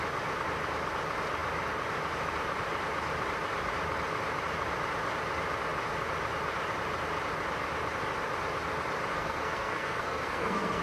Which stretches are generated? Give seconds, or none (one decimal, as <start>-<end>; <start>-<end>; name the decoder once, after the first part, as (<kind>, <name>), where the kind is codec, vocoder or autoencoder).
9.1-10.8 (codec, SNAC)